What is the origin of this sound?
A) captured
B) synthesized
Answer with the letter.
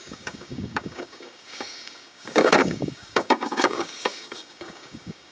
B